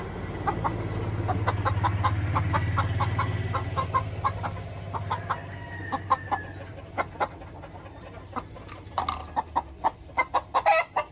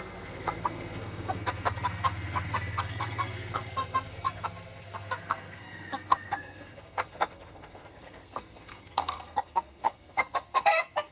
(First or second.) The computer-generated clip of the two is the second